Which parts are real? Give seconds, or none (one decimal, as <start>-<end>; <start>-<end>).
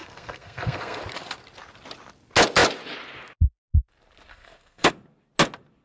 1.0-4.3; 4.9-5.8